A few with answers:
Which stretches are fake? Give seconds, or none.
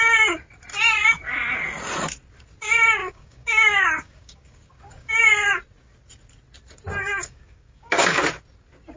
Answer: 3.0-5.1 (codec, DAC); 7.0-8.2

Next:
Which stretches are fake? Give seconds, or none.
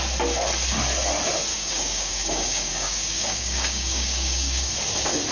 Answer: 1.5-4.7 (codec, DAC)